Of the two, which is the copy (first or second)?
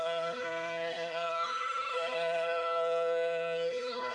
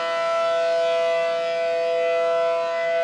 first